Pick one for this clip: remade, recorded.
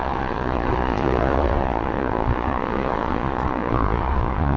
remade